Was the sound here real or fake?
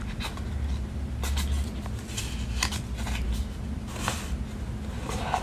real